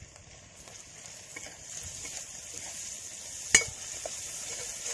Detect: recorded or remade recorded